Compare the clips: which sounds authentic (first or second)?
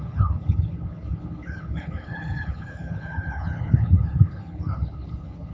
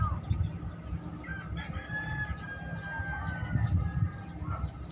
second